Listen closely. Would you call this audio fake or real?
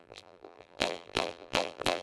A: fake